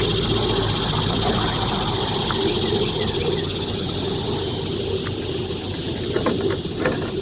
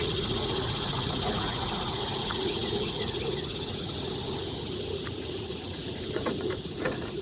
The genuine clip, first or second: first